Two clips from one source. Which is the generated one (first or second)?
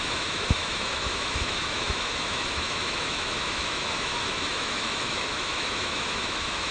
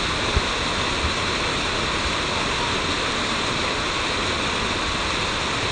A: first